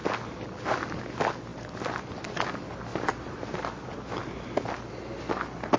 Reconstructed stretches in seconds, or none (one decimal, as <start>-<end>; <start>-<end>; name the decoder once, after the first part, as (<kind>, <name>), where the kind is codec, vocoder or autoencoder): 0.0-1.0 (vocoder, BigVGAN v2); 1.5-2.2; 2.9-4.1